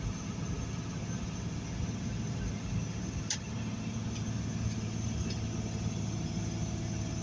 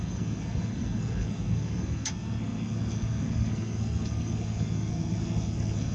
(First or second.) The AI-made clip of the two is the second